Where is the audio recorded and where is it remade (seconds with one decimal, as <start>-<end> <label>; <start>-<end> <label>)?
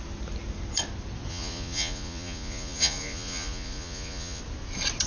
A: 0.0-1.3 recorded; 1.3-4.4 remade; 4.4-5.1 recorded